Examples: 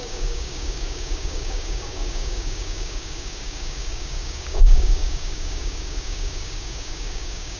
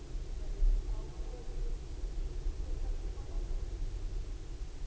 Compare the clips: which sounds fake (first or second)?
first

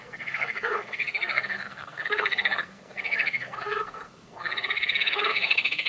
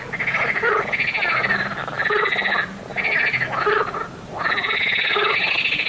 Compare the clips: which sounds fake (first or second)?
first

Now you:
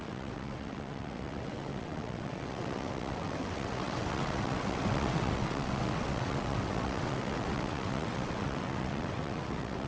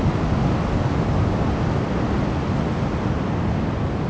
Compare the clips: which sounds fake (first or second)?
first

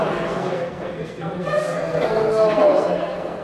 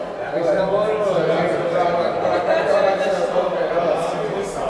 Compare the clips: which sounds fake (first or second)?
first